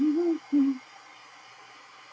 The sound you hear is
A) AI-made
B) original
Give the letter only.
B